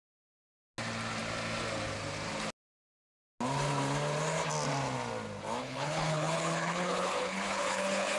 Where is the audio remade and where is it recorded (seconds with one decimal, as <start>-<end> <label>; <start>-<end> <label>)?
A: 0.0-5.6 recorded; 5.6-8.2 remade